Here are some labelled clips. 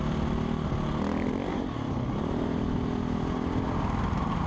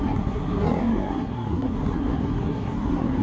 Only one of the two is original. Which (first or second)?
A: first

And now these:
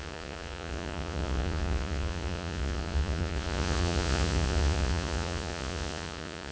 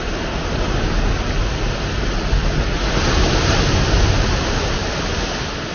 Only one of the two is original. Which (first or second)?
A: second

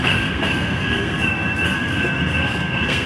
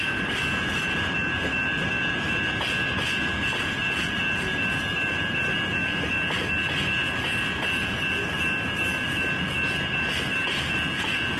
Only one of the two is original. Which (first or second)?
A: second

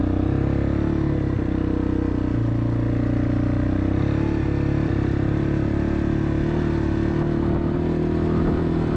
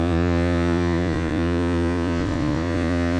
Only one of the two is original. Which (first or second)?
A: first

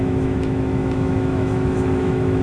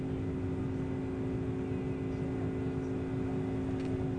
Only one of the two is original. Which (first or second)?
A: second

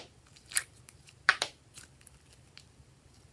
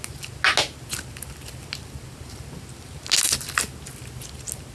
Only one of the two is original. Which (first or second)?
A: second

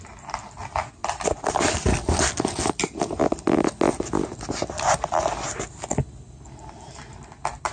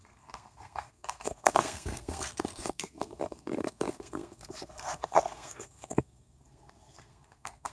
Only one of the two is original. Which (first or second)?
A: first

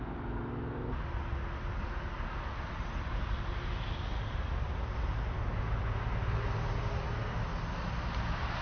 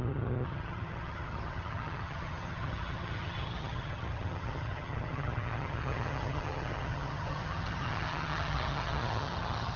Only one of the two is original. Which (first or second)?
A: first